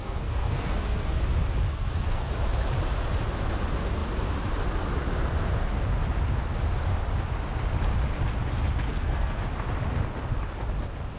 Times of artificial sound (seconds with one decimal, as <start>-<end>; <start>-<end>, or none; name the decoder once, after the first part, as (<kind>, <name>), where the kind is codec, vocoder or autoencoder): 0.0-1.2 (codec, SNAC); 1.7-2.3; 8.9-9.4